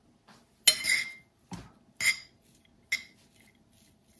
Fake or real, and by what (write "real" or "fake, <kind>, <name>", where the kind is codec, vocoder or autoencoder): real